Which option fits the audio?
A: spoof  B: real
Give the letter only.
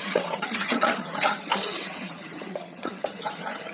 A